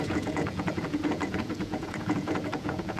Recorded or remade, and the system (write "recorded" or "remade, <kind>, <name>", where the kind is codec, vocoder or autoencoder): remade, vocoder, Vocos